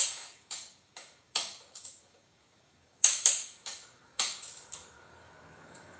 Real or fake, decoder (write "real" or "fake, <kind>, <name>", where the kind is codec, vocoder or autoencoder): fake, codec, DAC